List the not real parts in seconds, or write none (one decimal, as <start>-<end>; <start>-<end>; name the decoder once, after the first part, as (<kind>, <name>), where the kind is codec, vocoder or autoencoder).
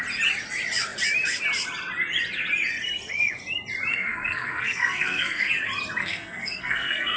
3.9-5.5 (codec, SNAC); 6.0-7.2